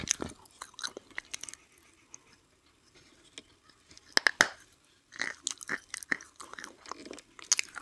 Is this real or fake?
real